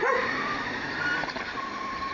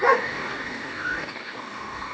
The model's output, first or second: second